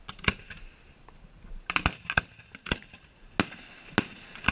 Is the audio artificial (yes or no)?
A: no